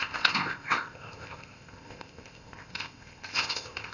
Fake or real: fake